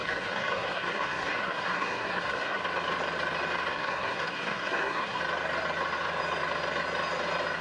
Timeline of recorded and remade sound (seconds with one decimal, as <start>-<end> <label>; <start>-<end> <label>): 0.0-2.6 remade; 2.6-3.7 recorded; 3.7-5.2 remade; 5.2-7.6 recorded